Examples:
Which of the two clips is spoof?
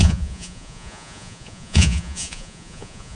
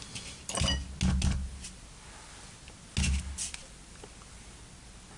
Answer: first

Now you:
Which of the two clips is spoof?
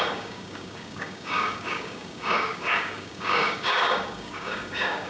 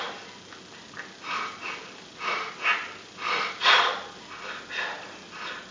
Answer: first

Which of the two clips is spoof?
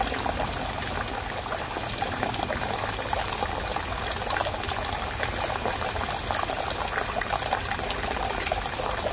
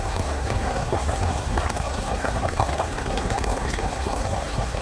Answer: second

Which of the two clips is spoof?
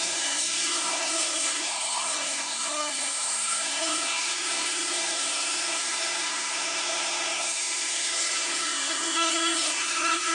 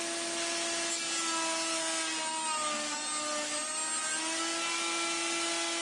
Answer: first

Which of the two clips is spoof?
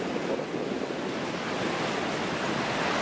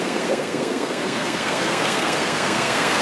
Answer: second